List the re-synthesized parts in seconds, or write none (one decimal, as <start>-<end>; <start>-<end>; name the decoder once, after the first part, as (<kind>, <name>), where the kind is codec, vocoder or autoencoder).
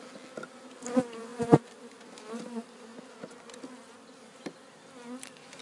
none